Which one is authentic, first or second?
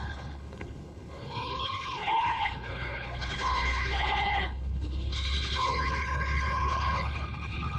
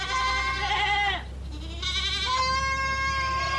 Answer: second